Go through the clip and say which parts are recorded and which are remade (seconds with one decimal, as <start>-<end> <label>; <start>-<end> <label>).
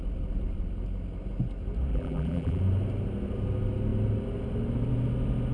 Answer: 0.0-1.9 recorded; 1.9-2.6 remade; 2.6-5.5 recorded